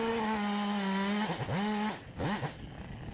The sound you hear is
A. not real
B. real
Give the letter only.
B